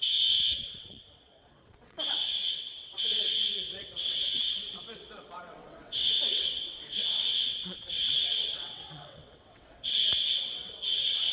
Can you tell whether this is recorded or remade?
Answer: remade